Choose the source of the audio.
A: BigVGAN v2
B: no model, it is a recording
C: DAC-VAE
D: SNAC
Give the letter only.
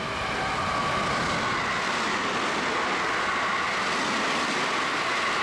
B